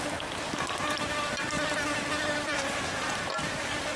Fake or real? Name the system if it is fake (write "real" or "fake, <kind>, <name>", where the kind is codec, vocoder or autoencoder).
fake, vocoder, BigVGAN v2